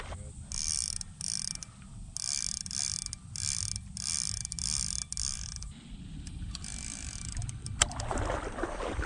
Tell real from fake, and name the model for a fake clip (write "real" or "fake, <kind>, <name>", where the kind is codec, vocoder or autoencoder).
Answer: real